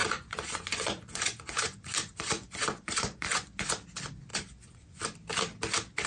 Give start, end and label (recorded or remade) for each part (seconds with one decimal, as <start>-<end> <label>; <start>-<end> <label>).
0.0-3.7 remade; 3.7-4.3 recorded; 4.3-5.0 remade; 5.0-6.1 recorded